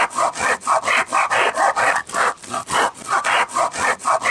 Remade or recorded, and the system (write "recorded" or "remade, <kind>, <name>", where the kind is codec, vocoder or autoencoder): recorded